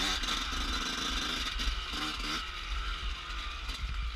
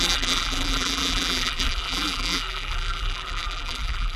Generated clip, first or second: second